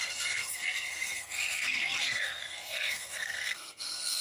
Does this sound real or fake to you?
fake